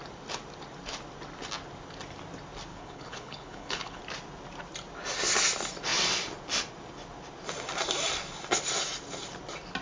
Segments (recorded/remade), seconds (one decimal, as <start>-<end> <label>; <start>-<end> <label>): 0.0-2.7 recorded; 2.7-4.0 remade; 4.0-9.8 recorded

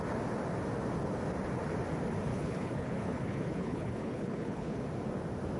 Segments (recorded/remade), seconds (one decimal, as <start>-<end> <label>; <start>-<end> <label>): 0.0-2.3 recorded; 2.3-4.8 remade; 4.8-5.6 recorded